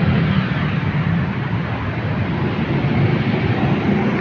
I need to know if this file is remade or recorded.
recorded